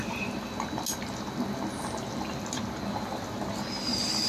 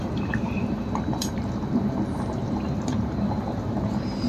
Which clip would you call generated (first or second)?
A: second